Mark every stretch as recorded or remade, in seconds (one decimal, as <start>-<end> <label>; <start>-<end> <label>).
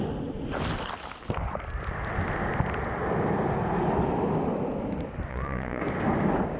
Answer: 0.0-5.3 recorded; 5.3-5.8 remade; 5.8-6.6 recorded